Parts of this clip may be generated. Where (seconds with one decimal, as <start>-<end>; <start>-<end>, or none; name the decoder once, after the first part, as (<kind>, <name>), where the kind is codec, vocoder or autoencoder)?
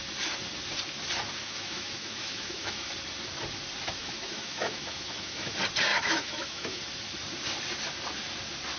1.4-2.9 (autoencoder, DAC-VAE); 4.0-5.5; 5.9-6.8